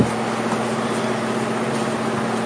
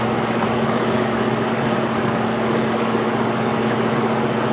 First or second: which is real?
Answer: first